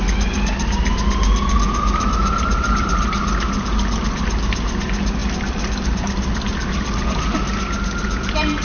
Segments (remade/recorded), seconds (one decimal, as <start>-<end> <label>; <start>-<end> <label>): 0.0-8.6 recorded